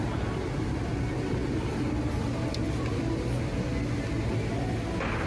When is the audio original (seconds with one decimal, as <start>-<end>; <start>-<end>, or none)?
0.0-5.3